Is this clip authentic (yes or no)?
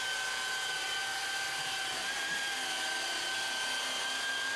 yes